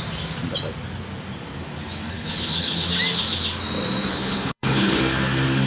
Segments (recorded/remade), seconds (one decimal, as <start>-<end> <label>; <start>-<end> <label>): 0.0-2.1 recorded; 2.1-2.9 remade; 2.9-4.1 recorded; 4.1-5.0 remade; 5.0-5.7 recorded